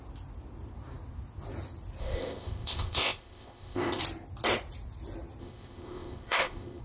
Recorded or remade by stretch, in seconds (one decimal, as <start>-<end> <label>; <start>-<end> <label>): 0.0-2.0 recorded; 2.0-4.0 remade; 4.0-5.4 recorded; 5.4-6.8 remade